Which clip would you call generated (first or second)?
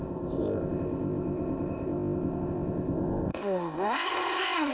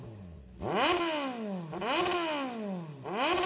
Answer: first